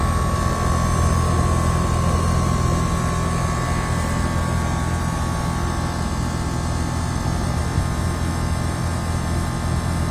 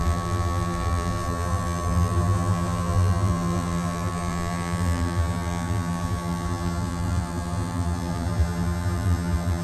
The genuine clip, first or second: first